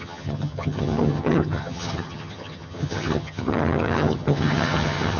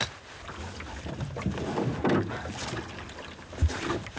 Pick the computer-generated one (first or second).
first